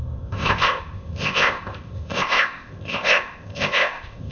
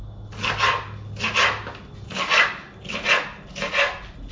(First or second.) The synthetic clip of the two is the first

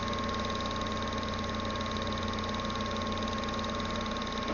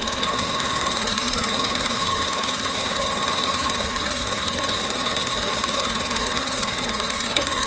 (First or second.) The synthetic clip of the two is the second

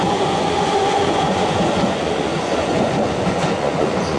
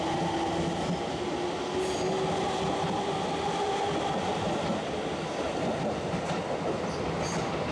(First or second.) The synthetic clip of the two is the first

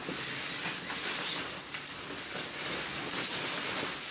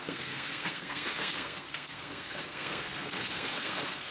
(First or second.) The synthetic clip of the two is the second